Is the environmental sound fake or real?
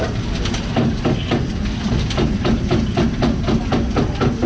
real